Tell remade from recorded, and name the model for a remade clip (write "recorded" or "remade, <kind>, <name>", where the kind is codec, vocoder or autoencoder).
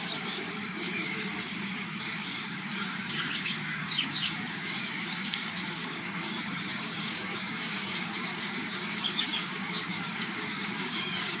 remade, codec, DAC